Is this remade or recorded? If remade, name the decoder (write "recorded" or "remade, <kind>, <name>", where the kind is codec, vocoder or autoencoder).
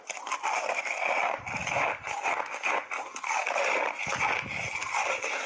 recorded